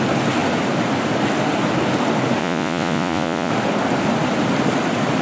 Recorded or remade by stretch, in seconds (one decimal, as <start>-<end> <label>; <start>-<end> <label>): 0.0-2.4 recorded; 2.4-3.5 remade; 3.5-5.2 recorded